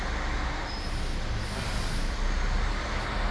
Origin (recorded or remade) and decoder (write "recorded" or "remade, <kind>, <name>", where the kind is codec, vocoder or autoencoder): recorded